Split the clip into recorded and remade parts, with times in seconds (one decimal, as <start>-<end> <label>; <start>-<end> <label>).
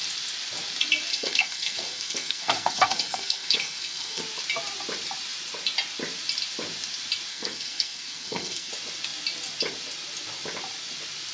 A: 0.0-1.1 recorded; 1.1-4.2 remade; 4.2-7.3 recorded; 7.3-8.7 remade; 8.7-11.3 recorded